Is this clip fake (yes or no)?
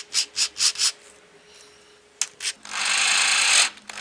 no